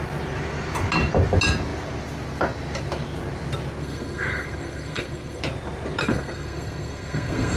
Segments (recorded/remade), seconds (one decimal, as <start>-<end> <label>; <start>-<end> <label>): 0.0-3.8 recorded; 3.8-5.4 remade; 5.4-6.0 recorded; 6.0-7.6 remade